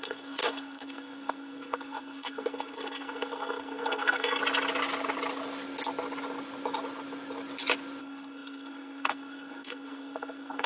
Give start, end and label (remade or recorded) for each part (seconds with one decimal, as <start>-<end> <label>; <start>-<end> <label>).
0.0-4.4 remade; 4.4-8.0 recorded; 8.0-10.7 remade